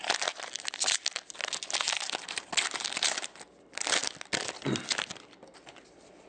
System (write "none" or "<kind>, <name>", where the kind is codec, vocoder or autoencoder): none